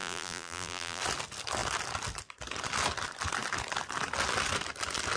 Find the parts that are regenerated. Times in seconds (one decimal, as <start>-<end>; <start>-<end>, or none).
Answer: 0.0-1.0